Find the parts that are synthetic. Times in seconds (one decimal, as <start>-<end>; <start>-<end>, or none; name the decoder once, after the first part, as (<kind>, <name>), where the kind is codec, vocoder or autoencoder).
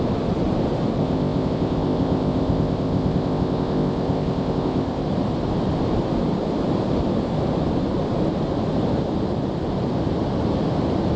1.0-5.0 (codec, ZipCodec)